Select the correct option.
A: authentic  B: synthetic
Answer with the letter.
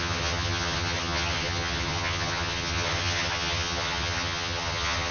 B